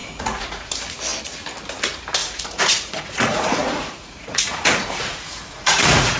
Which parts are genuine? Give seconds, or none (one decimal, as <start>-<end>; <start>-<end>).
0.7-2.2